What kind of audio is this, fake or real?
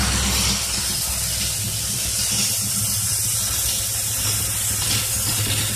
real